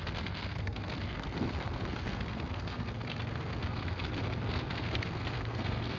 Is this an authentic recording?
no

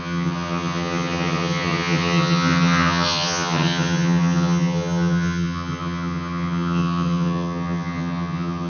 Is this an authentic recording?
no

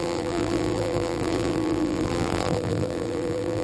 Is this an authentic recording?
no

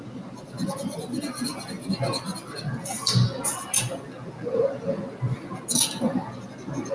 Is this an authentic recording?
yes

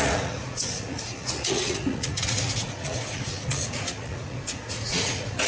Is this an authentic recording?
no